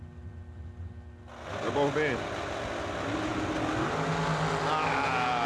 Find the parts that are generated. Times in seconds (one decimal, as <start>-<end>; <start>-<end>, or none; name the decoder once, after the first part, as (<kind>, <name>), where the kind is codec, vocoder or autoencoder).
none